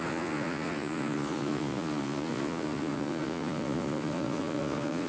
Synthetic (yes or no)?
yes